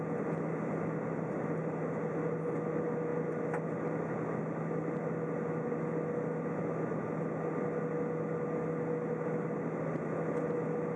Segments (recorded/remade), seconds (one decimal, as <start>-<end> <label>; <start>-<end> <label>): 0.0-11.0 recorded